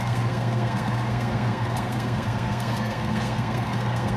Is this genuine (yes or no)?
no